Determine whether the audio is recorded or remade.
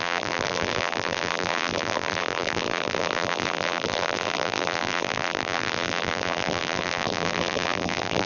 remade